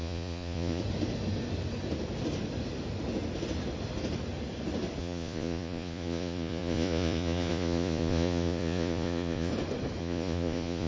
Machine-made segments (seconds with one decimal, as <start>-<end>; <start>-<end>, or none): 0.0-0.8; 5.0-9.5; 10.0-10.9